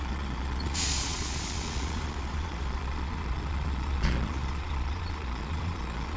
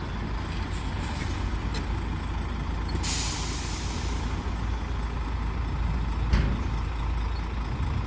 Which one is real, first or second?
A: second